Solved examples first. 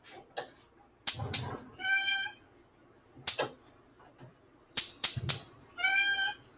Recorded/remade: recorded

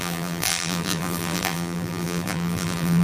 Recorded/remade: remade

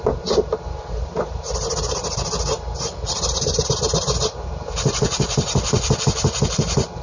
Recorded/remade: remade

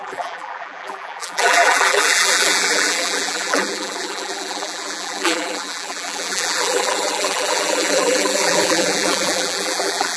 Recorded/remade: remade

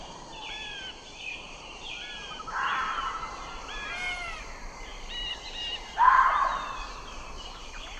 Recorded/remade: remade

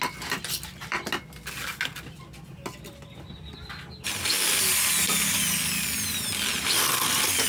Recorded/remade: recorded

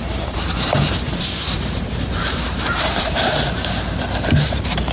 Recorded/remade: remade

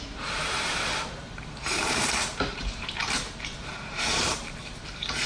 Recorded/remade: remade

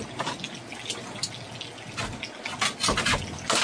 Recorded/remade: recorded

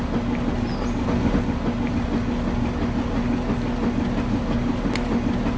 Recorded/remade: recorded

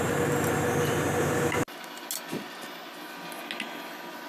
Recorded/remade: recorded